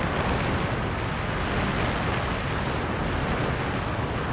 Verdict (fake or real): real